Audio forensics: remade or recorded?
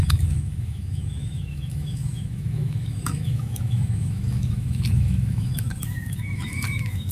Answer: remade